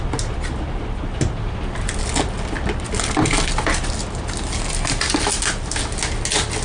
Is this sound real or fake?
real